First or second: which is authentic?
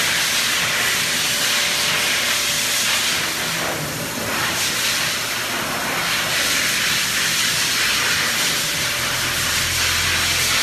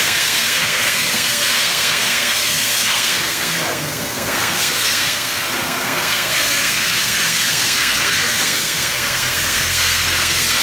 first